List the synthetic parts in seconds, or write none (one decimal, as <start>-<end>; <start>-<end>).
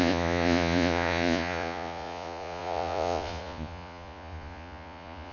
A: 0.0-5.3